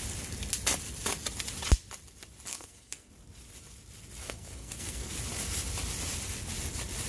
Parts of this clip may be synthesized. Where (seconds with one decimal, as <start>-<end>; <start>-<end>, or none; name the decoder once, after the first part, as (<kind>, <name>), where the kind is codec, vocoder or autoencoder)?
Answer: 2.5-3.1 (codec, SNAC); 4.2-5.1